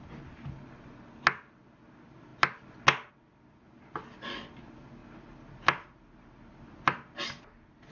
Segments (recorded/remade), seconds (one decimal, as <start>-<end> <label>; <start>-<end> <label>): 0.0-7.9 recorded

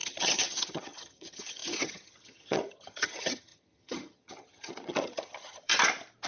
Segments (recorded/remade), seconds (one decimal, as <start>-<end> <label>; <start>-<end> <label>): 0.0-5.7 remade; 5.7-6.3 recorded

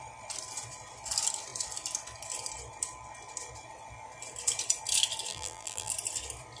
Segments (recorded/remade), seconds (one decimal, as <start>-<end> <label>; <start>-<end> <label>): 0.0-5.3 recorded; 5.3-5.9 remade; 5.9-6.6 recorded

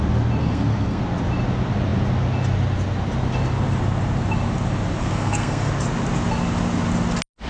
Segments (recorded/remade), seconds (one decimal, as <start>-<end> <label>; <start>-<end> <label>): 0.0-0.4 recorded; 0.4-1.0 remade; 1.0-5.0 recorded; 5.0-5.7 remade; 5.7-7.5 recorded

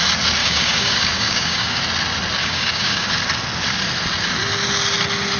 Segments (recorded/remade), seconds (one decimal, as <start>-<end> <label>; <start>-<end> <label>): 0.0-0.4 recorded; 0.4-1.8 remade; 1.8-2.4 recorded; 2.4-3.1 remade; 3.1-5.4 recorded

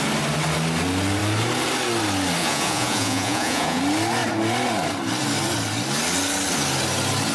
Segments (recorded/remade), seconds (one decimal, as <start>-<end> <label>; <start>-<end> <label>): 0.0-2.4 recorded; 2.4-3.8 remade; 3.8-7.3 recorded

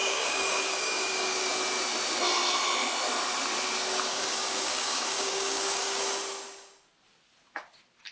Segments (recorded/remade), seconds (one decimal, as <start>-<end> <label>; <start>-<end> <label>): 0.0-1.5 remade; 1.5-4.1 recorded; 4.1-6.0 remade; 6.0-8.1 recorded